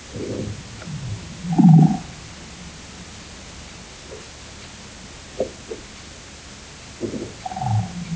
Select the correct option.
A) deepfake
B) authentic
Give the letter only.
B